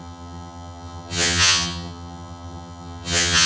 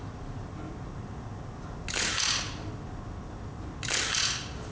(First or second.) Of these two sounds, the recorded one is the second